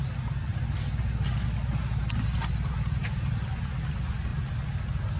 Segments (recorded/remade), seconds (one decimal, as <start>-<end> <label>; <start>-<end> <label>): 0.0-5.2 recorded